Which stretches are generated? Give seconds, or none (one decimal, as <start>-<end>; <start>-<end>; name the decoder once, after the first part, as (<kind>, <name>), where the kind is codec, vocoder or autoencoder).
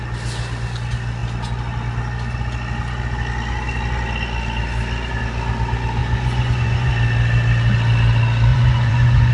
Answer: 6.0-6.9 (vocoder, Vocos); 8.5-9.3